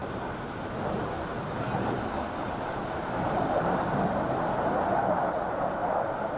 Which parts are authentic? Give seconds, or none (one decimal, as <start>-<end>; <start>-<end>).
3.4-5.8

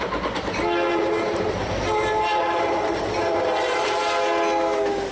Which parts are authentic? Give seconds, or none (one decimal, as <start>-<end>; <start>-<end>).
0.0-0.9; 4.0-5.1

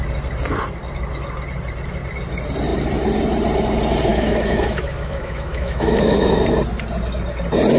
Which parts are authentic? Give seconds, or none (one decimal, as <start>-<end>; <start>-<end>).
0.0-4.1; 6.3-7.8

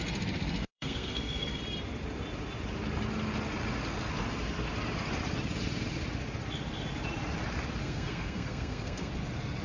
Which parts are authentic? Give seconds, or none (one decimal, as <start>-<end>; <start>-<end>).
0.0-0.6; 1.6-7.8; 9.1-9.6

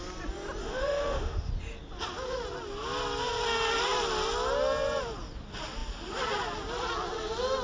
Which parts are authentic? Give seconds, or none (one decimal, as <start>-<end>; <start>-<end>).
0.0-0.6; 1.5-7.6

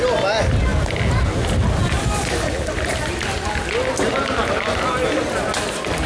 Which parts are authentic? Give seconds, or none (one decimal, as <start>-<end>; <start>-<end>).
0.0-6.1

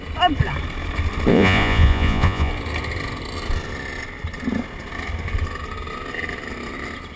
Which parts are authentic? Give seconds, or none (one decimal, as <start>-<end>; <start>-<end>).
0.0-1.3; 2.5-7.2

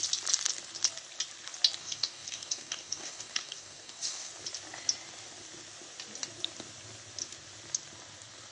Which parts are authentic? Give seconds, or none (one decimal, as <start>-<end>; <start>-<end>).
0.0-1.8; 4.3-8.5